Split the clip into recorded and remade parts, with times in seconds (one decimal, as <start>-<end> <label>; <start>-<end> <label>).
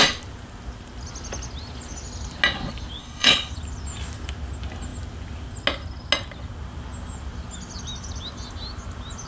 0.0-3.0 recorded; 3.0-3.5 remade; 3.5-9.3 recorded